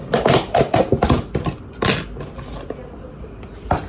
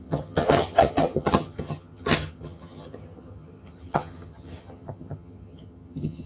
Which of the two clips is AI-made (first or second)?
second